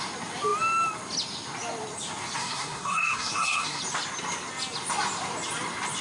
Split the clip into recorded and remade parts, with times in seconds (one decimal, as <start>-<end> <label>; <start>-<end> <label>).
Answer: 0.0-2.4 recorded; 2.4-3.8 remade; 3.8-6.0 recorded